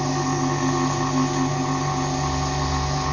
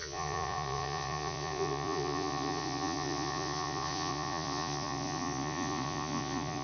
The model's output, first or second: second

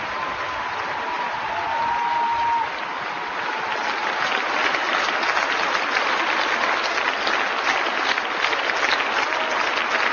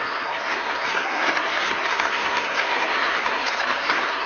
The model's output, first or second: second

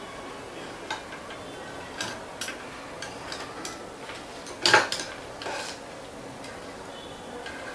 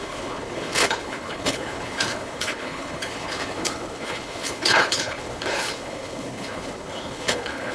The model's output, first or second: second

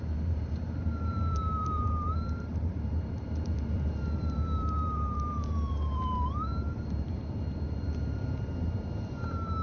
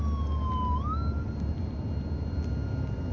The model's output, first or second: first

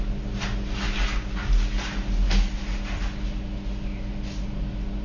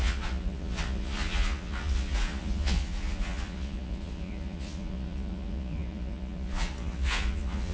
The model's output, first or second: second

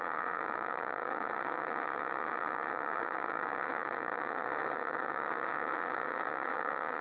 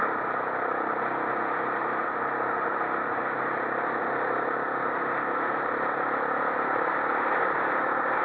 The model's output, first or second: first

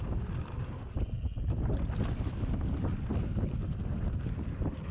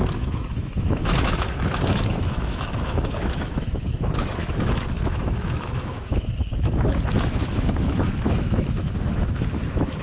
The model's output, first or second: second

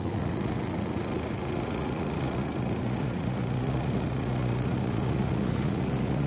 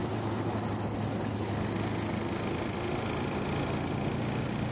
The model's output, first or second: first